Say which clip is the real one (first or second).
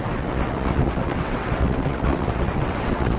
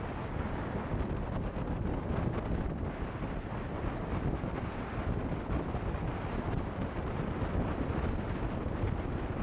second